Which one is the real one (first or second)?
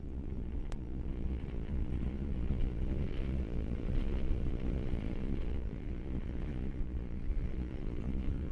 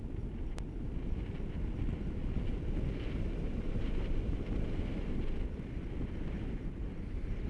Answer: second